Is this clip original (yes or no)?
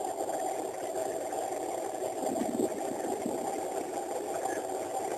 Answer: yes